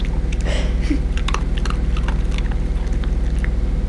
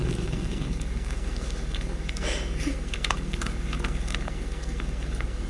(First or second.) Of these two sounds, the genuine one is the first